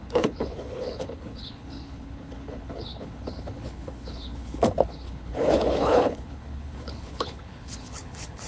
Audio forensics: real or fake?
fake